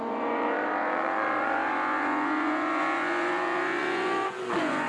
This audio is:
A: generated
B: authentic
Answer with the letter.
A